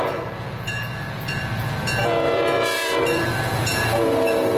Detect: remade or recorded remade